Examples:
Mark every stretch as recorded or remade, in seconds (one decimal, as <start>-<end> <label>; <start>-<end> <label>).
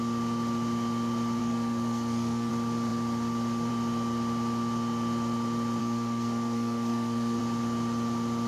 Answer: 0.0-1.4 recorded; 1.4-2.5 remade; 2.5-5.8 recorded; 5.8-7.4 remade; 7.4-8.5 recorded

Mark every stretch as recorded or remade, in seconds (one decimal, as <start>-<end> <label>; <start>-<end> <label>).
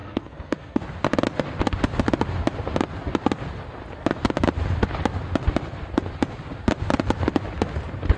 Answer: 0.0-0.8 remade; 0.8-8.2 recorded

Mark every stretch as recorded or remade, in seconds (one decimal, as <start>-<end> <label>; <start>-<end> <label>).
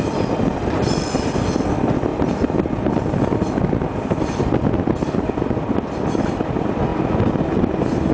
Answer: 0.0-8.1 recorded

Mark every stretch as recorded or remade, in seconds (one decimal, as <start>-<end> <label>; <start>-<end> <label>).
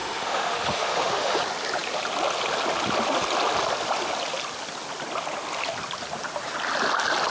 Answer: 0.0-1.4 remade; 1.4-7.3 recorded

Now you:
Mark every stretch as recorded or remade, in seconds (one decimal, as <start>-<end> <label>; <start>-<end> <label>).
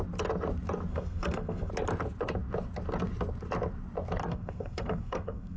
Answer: 0.0-0.9 recorded; 0.9-1.7 remade; 1.7-4.2 recorded; 4.2-5.6 remade